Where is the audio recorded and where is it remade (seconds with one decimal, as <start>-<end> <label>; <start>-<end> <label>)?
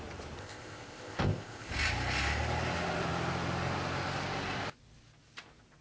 0.0-0.4 recorded; 0.4-1.7 remade; 1.7-5.8 recorded